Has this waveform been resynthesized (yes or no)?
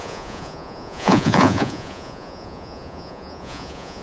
yes